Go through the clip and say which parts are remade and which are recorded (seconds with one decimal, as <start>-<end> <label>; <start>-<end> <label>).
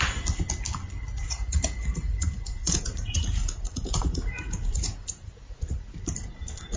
0.0-1.2 recorded; 1.2-5.3 remade; 5.3-6.8 recorded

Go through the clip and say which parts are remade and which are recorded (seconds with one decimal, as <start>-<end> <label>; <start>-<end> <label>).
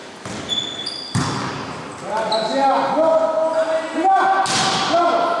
0.0-5.4 recorded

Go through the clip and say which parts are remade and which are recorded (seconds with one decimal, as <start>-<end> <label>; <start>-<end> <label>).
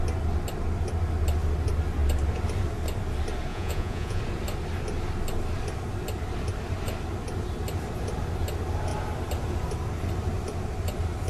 0.0-3.5 recorded; 3.5-4.2 remade; 4.2-11.3 recorded